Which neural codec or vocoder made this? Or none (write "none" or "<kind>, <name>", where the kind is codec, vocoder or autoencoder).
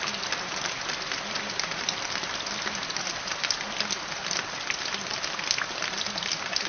none